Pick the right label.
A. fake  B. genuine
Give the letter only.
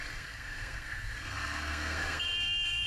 A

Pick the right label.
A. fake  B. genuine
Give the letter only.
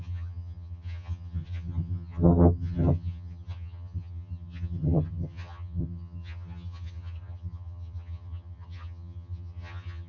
A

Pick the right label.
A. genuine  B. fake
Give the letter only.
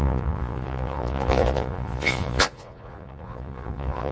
B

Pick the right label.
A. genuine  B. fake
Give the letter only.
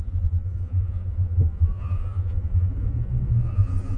B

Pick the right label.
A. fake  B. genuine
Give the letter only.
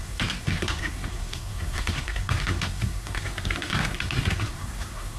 A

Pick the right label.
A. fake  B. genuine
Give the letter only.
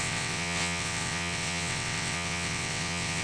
A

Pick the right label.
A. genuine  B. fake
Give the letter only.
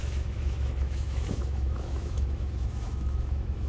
B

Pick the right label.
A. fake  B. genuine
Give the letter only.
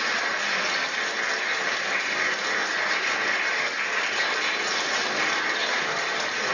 B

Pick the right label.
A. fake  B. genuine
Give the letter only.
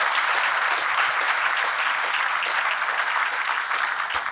B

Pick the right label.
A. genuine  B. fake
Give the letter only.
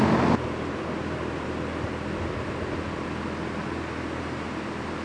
A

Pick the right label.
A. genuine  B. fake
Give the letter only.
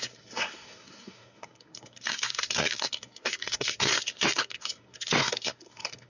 B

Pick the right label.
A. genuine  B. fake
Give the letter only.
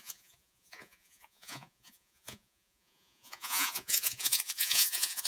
B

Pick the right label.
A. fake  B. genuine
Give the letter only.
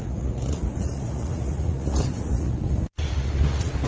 A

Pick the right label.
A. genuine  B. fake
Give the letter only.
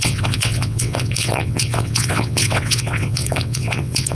B